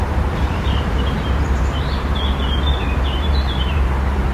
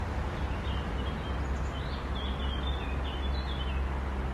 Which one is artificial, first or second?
first